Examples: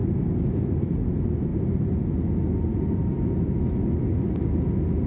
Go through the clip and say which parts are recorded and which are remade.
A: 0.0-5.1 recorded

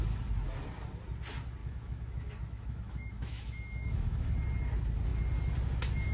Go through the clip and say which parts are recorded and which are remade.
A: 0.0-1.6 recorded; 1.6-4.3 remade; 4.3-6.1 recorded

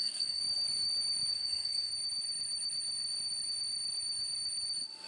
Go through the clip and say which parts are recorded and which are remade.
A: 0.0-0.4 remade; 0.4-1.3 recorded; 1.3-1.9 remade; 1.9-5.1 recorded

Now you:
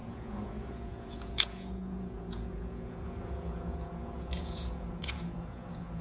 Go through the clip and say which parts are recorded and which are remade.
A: 0.0-6.0 remade

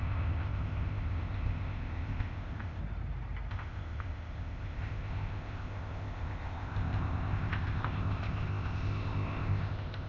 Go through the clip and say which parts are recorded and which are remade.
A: 0.0-2.8 remade; 2.8-3.5 recorded; 3.5-10.1 remade